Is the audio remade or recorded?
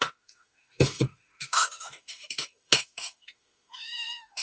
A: remade